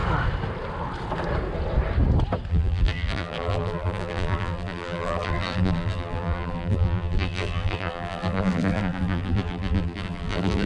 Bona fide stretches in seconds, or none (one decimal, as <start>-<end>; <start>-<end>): 0.0-2.5